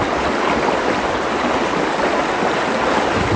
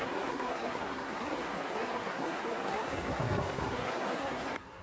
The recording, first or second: first